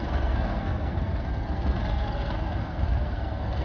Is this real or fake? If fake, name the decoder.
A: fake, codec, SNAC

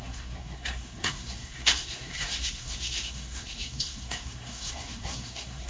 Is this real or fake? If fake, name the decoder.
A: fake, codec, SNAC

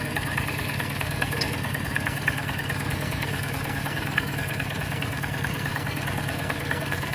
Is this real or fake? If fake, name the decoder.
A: fake, codec, SNAC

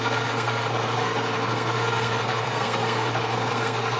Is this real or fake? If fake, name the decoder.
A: fake, codec, SNAC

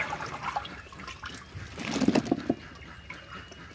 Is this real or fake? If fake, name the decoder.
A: real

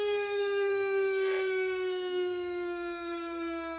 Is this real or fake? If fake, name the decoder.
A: fake, codec, SNAC